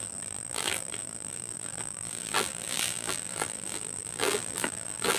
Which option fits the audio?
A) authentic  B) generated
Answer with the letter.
B